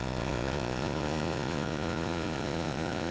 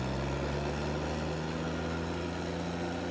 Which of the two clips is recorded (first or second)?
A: second